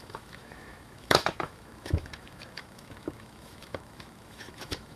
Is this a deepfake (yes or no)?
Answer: yes